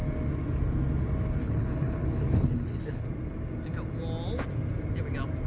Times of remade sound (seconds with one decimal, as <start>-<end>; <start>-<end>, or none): 1.4-3.1